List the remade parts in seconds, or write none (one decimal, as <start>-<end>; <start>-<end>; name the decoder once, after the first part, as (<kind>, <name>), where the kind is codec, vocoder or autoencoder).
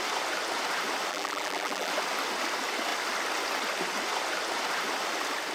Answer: 1.1-1.9 (vocoder, BigVGAN v2)